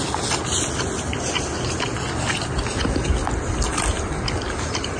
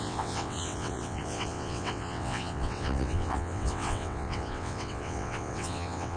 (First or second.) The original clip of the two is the first